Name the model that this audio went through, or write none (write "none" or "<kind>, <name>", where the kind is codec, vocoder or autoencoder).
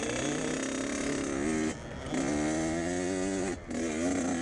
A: none